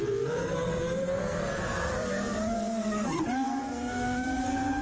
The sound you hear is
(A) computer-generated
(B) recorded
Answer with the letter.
A